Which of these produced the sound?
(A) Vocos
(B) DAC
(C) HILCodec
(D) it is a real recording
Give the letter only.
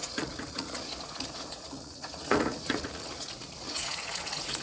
A